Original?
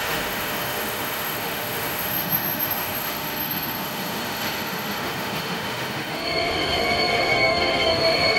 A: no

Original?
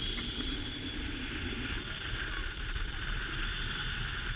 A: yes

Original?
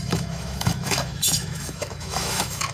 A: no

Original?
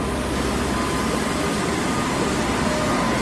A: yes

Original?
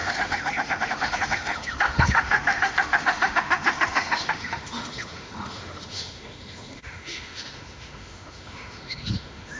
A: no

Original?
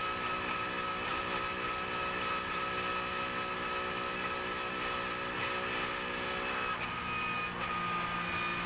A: yes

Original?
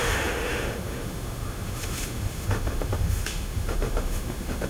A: no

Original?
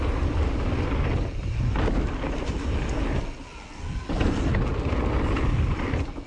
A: yes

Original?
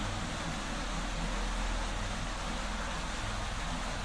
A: yes